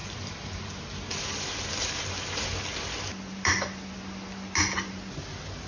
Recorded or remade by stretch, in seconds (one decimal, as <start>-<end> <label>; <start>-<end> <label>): 0.0-0.6 remade; 0.6-5.7 recorded